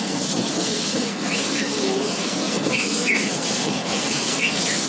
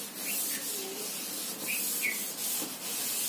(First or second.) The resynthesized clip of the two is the first